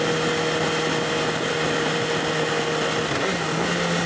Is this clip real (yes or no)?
yes